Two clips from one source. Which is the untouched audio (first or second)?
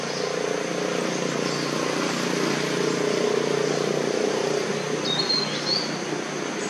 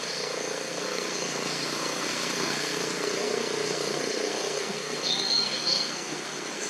first